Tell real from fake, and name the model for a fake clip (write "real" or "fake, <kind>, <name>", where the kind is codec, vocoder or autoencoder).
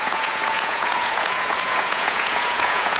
fake, vocoder, Vocos